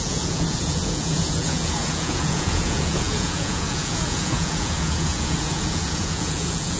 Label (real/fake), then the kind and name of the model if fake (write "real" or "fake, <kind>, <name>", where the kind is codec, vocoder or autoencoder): fake, vocoder, Vocos